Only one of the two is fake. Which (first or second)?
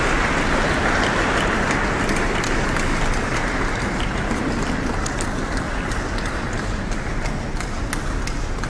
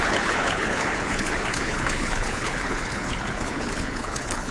second